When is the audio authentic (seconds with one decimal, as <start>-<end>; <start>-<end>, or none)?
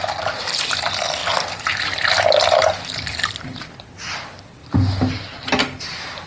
0.0-6.3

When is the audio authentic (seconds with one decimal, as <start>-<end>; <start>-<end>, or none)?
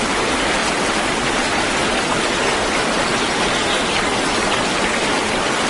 0.0-5.7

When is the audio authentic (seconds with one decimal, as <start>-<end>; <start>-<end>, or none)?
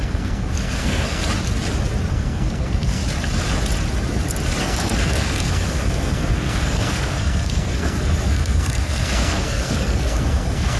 1.2-2.1; 3.0-4.6